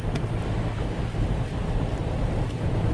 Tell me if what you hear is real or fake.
real